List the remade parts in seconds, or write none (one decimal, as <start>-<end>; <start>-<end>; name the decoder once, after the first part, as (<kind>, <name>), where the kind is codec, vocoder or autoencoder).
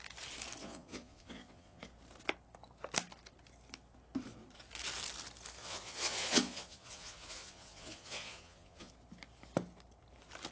0.6-1.8 (vocoder, Vocos); 5.6-8.9